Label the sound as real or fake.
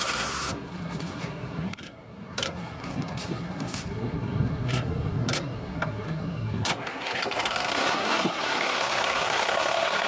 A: fake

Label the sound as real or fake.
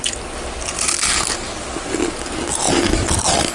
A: real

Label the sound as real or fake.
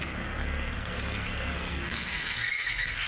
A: fake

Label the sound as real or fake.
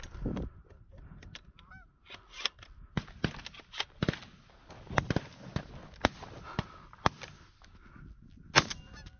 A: real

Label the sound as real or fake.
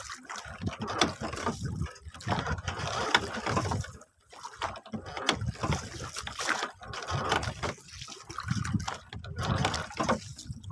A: real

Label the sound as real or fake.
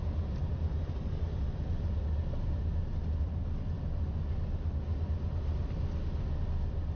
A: real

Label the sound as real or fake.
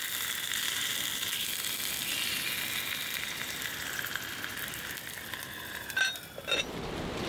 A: real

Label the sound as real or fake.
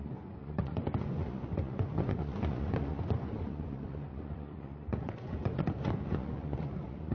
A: fake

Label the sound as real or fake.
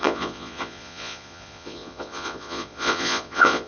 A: fake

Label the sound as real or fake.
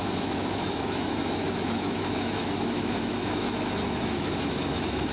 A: fake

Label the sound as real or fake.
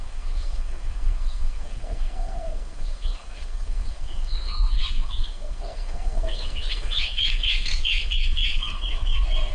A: fake